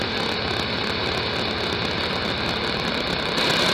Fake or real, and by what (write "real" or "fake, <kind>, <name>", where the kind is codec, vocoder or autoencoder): real